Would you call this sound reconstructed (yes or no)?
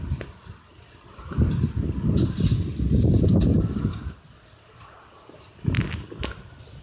no